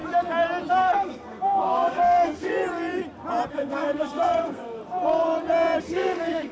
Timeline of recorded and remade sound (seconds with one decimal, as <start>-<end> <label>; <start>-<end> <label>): 0.0-0.7 recorded; 0.7-2.5 remade; 2.5-3.5 recorded; 3.5-4.8 remade; 4.8-5.8 recorded; 5.8-6.5 remade